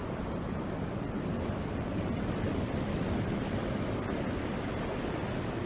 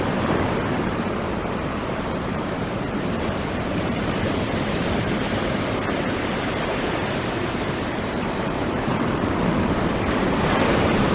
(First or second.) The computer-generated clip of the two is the second